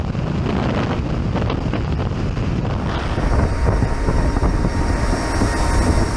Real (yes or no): yes